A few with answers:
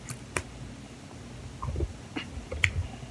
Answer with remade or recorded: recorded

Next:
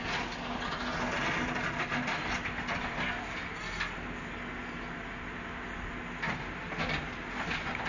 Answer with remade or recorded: recorded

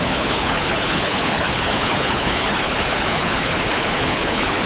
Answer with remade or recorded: remade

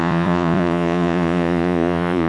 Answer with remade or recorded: remade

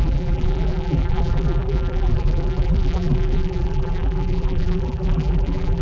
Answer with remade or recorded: remade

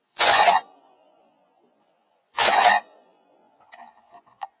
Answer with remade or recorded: remade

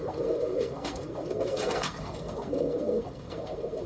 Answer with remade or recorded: remade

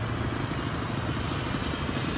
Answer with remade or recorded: recorded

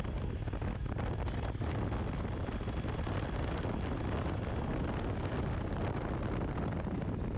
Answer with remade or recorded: recorded